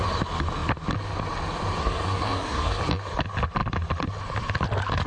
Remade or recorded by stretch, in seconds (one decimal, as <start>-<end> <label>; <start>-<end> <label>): 0.0-1.8 recorded; 1.8-2.8 remade; 2.8-5.1 recorded